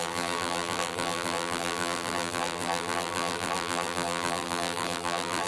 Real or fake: fake